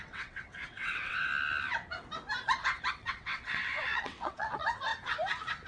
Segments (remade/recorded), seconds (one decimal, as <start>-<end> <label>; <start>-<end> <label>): 0.0-1.3 remade; 1.3-2.9 recorded; 2.9-4.9 remade; 4.9-5.7 recorded